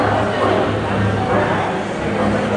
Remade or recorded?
recorded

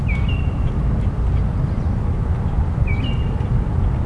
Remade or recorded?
recorded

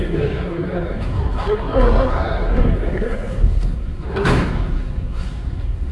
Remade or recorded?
remade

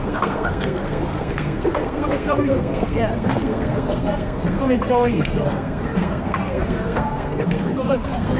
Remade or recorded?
remade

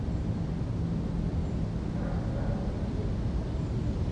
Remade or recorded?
recorded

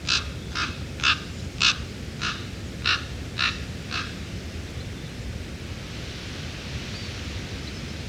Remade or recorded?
recorded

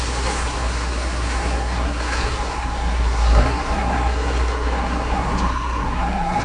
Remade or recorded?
remade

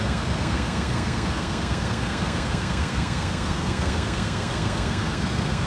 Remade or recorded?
remade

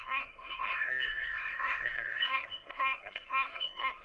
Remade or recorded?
remade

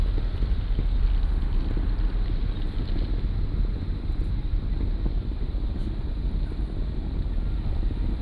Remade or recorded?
recorded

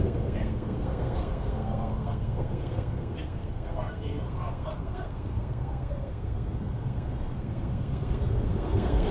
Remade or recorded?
remade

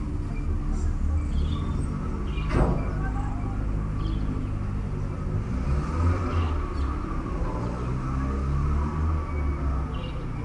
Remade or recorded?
recorded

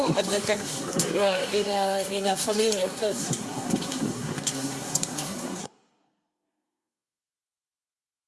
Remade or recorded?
remade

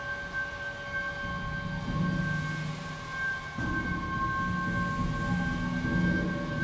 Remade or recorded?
recorded